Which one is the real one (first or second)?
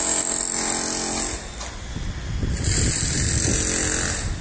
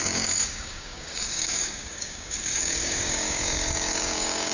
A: first